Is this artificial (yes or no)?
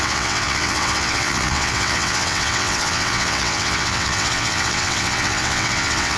yes